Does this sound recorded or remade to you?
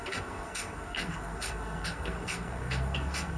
remade